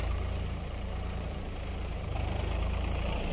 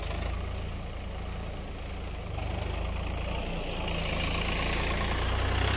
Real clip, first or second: second